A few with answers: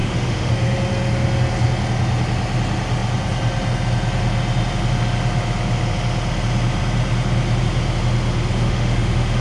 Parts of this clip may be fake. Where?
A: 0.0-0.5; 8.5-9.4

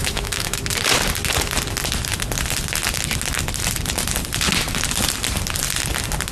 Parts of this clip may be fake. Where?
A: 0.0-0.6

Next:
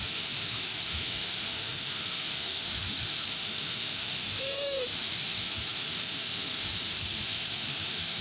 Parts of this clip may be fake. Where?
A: 0.0-8.2

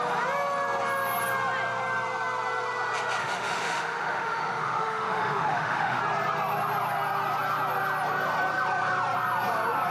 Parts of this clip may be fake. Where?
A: 3.2-6.0